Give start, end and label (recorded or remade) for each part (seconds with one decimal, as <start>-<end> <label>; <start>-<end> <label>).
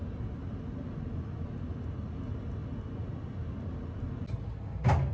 0.0-5.1 recorded